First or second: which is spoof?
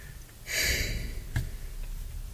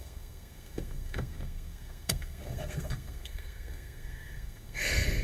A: second